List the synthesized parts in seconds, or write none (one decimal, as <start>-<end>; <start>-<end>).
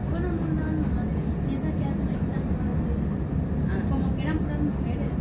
none